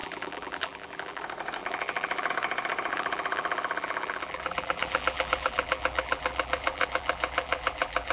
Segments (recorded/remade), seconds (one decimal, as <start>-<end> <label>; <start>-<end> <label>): 0.0-1.2 remade; 1.2-1.6 recorded; 1.6-2.3 remade; 2.3-2.9 recorded; 2.9-8.1 remade